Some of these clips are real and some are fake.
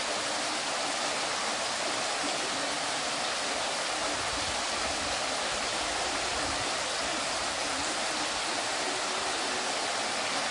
real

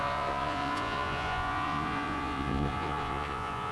fake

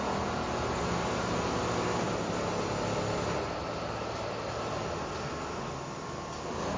real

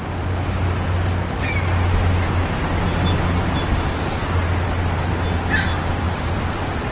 real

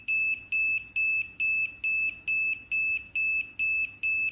real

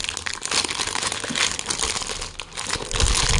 real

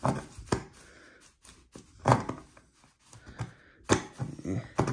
real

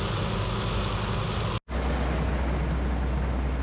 real